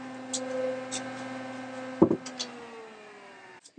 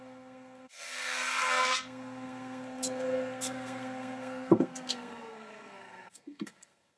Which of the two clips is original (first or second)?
first